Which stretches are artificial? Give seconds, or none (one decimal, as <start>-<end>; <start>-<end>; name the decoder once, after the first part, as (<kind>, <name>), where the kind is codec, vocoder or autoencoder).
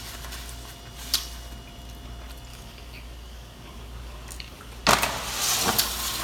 2.5-4.7 (codec, DAC)